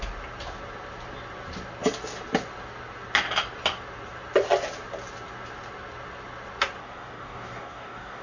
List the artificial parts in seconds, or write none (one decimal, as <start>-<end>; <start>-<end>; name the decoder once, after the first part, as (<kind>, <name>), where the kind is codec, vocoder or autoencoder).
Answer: 6.8-8.2 (codec, DAC)